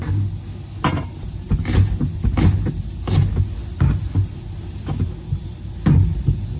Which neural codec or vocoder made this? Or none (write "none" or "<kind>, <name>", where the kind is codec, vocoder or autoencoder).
none